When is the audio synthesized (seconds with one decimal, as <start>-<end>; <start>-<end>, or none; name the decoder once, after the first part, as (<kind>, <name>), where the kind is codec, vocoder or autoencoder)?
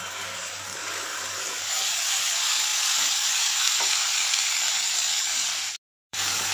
0.0-5.5 (codec, DAC); 6.1-6.5